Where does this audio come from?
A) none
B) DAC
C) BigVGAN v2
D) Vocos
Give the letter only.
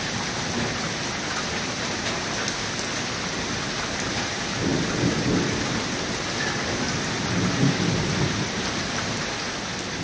A